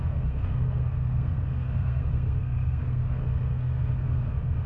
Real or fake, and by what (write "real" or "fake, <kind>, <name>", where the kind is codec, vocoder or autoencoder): fake, codec, SNAC